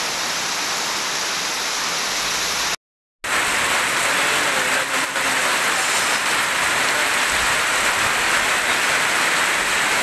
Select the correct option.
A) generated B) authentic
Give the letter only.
B